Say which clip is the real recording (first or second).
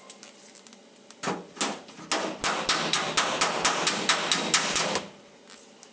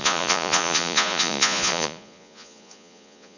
first